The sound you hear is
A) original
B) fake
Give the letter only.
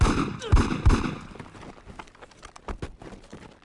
A